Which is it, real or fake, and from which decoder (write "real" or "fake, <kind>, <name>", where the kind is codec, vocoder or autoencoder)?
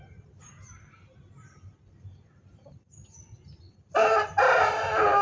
real